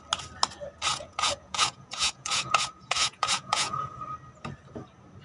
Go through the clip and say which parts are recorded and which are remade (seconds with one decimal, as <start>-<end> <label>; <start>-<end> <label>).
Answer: 0.0-0.9 recorded; 0.9-4.0 remade; 4.0-5.2 recorded